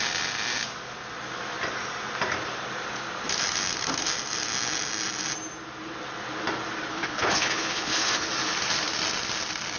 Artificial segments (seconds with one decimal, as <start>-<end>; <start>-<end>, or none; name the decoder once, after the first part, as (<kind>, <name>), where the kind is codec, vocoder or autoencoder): 6.9-8.3 (codec, HILCodec)